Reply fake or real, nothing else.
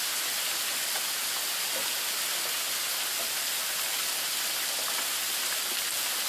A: real